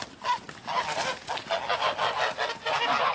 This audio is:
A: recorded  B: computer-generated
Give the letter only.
A